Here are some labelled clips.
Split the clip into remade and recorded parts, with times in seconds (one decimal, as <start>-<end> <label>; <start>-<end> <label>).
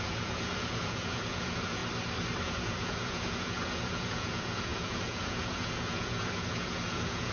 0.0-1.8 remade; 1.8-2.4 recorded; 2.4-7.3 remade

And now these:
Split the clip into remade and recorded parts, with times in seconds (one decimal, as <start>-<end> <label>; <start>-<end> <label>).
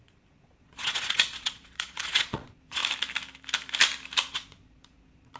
0.0-2.8 remade; 2.8-4.3 recorded; 4.3-5.4 remade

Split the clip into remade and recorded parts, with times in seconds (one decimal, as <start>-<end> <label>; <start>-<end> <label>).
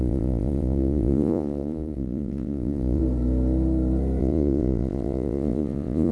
0.0-3.0 remade; 3.0-4.2 recorded; 4.2-6.1 remade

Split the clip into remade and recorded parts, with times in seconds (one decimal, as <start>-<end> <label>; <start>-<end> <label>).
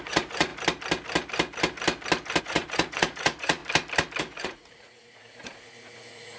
0.0-0.5 remade; 0.5-2.4 recorded; 2.4-3.6 remade; 3.6-4.2 recorded; 4.2-6.4 remade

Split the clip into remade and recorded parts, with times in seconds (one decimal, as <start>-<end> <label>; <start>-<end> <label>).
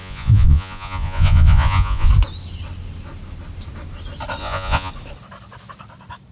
0.0-2.1 remade; 2.1-4.4 recorded; 4.4-4.9 remade; 4.9-6.3 recorded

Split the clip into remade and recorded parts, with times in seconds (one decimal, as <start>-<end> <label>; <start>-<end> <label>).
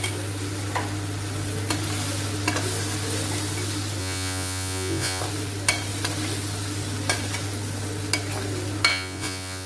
0.0-4.0 recorded; 4.0-5.2 remade; 5.2-8.9 recorded; 8.9-9.7 remade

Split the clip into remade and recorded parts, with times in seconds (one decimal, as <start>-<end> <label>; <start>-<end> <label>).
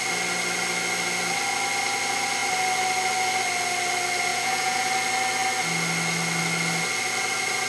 0.0-4.3 recorded; 4.3-4.9 remade; 4.9-7.7 recorded